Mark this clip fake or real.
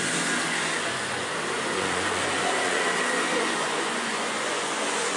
fake